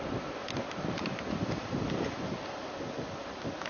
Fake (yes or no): no